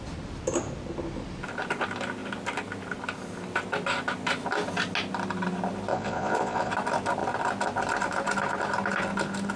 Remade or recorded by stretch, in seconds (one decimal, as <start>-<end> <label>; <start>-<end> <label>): 0.0-5.9 recorded; 5.9-6.7 remade; 6.7-9.6 recorded